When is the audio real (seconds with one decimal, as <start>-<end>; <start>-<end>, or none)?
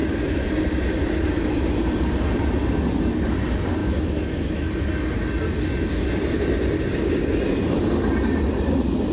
0.0-3.8; 4.7-9.1